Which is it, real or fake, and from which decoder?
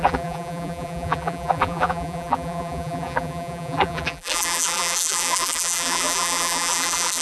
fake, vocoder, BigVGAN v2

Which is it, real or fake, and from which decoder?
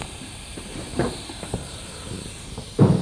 fake, vocoder, BigVGAN v2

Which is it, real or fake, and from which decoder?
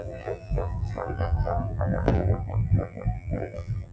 fake, vocoder, BigVGAN v2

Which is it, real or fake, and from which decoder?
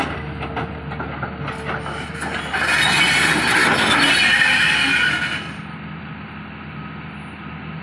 real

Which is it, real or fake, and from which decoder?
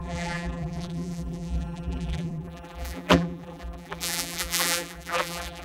fake, vocoder, BigVGAN v2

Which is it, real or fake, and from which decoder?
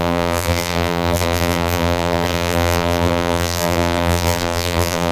fake, vocoder, BigVGAN v2